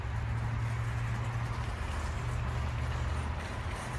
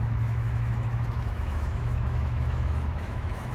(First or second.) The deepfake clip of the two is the second